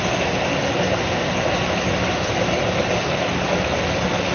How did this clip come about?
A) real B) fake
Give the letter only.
A